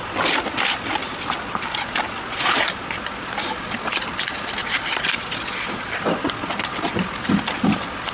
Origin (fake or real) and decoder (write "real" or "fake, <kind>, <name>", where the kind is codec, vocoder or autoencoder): real